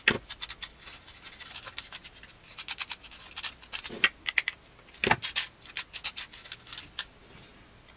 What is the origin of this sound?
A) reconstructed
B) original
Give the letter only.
B